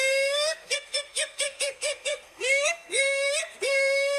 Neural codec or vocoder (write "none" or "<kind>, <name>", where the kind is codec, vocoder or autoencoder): codec, SNAC